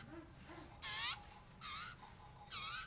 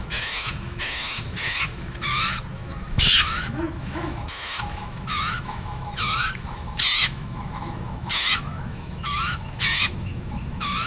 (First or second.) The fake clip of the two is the second